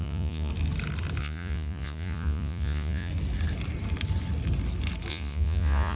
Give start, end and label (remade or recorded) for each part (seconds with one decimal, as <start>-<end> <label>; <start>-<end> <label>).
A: 0.0-0.5 remade; 0.5-1.2 recorded; 1.2-3.1 remade; 3.1-5.1 recorded; 5.1-6.0 remade